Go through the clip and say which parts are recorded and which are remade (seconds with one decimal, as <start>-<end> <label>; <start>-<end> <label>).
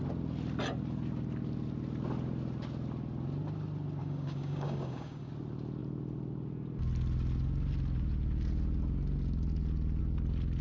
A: 0.0-4.0 recorded; 4.0-5.3 remade; 5.3-10.6 recorded